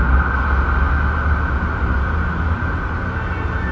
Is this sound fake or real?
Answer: real